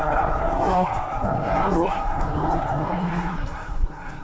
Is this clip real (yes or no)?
no